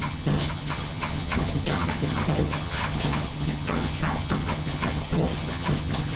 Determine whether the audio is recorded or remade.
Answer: remade